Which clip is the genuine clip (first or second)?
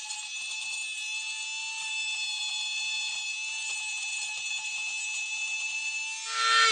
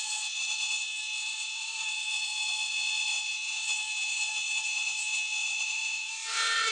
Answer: first